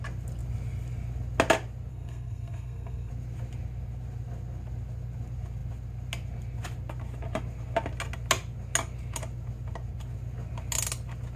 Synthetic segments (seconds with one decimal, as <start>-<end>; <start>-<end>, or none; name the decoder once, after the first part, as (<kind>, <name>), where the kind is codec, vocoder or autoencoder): 1.9-3.1 (codec, SNAC)